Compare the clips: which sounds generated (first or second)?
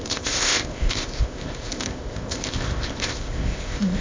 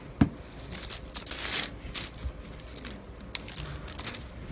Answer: first